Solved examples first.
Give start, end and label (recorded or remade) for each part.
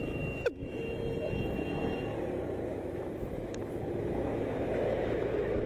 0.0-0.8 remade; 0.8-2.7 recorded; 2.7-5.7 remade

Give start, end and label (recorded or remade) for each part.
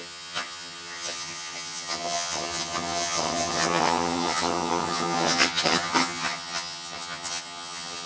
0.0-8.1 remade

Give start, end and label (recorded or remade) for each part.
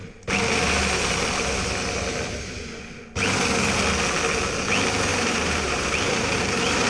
0.0-5.1 recorded; 5.1-6.9 remade